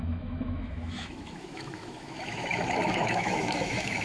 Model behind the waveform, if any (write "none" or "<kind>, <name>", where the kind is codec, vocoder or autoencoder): autoencoder, DAC-VAE